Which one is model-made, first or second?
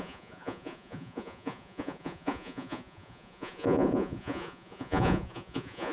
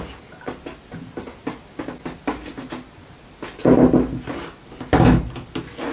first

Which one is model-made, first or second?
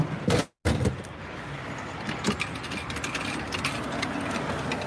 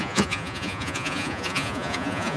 second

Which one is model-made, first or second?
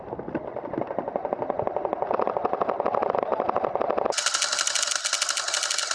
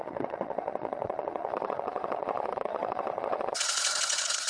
second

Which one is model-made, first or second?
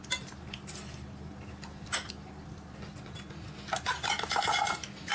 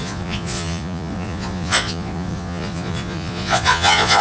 second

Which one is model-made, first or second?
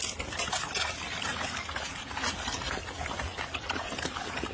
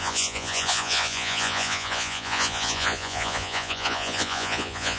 second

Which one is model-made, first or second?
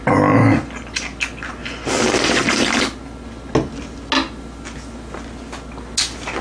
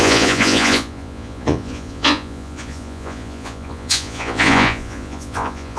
second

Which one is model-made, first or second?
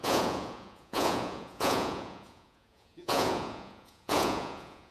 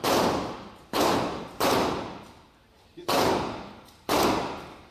first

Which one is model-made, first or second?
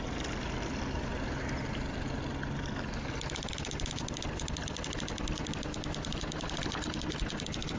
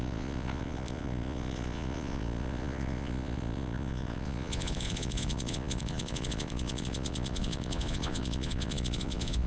second